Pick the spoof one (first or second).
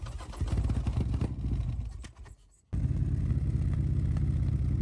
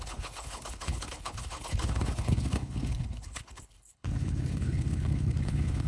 second